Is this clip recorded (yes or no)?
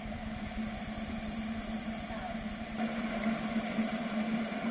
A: yes